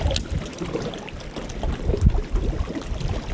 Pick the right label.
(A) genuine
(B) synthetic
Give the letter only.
A